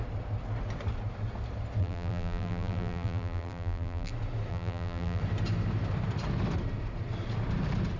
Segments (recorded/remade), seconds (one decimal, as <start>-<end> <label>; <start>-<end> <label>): 0.0-1.8 recorded; 1.8-4.1 remade; 4.1-4.5 recorded; 4.5-5.2 remade; 5.2-8.0 recorded